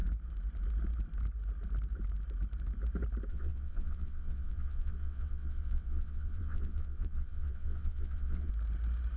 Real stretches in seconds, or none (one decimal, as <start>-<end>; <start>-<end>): 0.0-3.3; 8.5-9.2